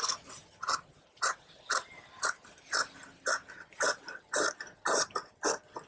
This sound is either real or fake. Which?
real